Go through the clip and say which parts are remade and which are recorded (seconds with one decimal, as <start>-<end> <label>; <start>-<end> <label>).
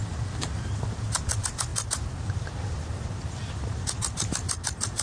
0.0-5.0 recorded